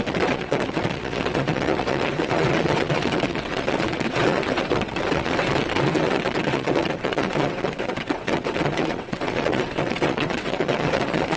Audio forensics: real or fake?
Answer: fake